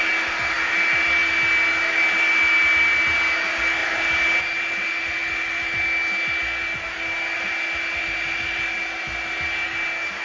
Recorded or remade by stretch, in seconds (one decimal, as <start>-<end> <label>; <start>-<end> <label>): 0.0-10.2 recorded